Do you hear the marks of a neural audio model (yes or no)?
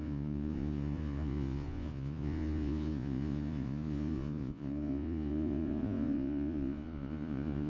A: yes